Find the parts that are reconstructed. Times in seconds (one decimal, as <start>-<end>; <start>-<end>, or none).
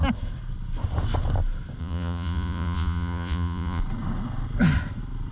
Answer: 1.8-3.8